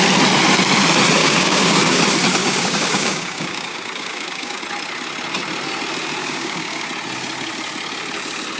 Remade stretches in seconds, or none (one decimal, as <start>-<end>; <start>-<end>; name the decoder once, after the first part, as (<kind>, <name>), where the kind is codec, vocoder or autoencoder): 1.2-2.0 (codec, DAC); 2.4-4.6; 6.2-6.9